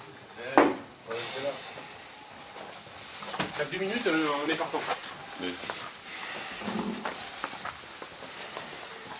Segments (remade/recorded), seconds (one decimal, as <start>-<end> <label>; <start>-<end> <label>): 0.0-9.2 recorded